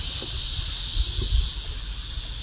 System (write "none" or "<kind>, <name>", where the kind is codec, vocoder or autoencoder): none